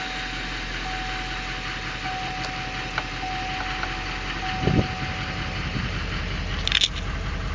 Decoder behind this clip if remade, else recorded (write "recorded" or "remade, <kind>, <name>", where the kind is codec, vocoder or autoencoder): recorded